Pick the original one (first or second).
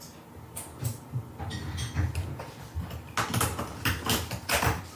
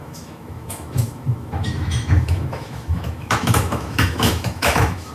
first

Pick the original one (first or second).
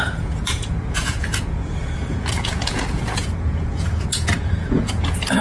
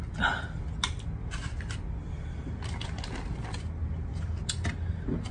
second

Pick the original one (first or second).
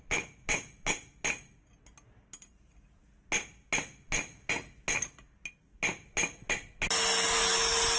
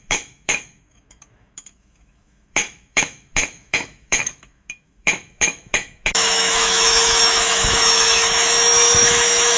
first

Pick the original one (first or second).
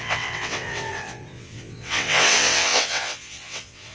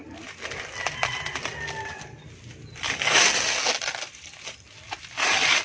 second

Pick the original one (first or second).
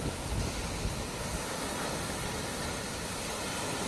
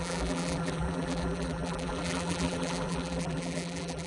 first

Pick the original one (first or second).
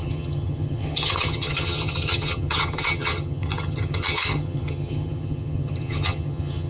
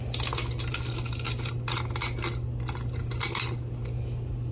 second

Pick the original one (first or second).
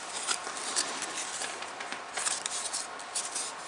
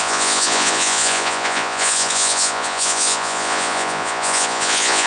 first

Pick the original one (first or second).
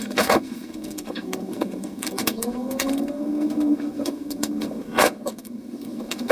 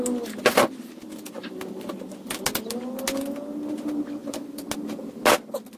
second